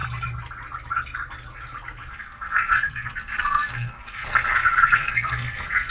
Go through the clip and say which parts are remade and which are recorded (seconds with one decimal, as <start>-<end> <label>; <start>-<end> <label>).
0.0-2.1 recorded; 2.1-5.9 remade

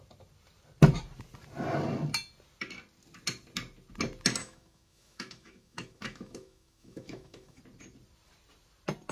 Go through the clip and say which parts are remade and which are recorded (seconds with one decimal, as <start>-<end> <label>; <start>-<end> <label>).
0.0-4.4 recorded; 4.4-7.6 remade; 7.6-9.1 recorded

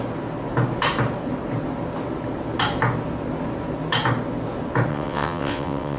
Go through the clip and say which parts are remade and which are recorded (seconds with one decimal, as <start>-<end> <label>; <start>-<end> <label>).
0.0-4.9 recorded; 4.9-6.0 remade

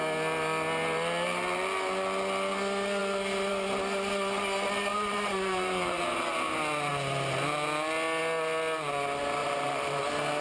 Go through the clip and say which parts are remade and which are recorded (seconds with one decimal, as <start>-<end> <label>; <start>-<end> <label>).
0.0-4.9 recorded; 4.9-6.0 remade; 6.0-9.4 recorded; 9.4-10.0 remade; 10.0-10.4 recorded

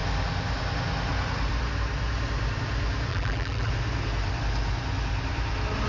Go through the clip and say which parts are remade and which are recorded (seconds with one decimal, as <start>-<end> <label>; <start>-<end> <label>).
0.0-3.1 recorded; 3.1-3.7 remade; 3.7-5.9 recorded

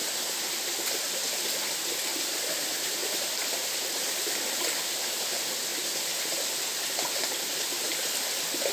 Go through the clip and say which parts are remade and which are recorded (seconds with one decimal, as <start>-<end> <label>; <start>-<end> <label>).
0.0-2.1 recorded; 2.1-5.0 remade; 5.0-8.7 recorded

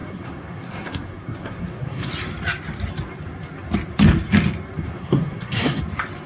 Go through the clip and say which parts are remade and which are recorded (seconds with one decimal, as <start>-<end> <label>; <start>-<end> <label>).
0.0-2.1 remade; 2.1-4.9 recorded; 4.9-5.8 remade; 5.8-6.3 recorded